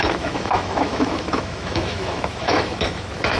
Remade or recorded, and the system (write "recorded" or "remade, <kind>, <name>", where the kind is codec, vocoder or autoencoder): remade, autoencoder, DAC-VAE